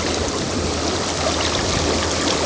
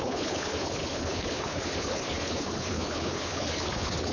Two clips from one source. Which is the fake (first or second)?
second